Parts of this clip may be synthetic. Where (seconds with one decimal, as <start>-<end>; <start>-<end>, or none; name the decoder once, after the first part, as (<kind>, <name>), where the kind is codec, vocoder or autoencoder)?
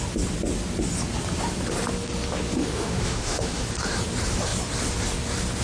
2.6-3.6 (autoencoder, DAC-VAE)